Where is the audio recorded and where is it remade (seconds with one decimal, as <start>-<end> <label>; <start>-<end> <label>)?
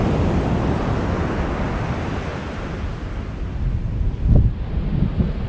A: 0.0-5.5 recorded